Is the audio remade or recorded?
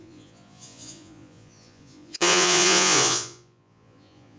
remade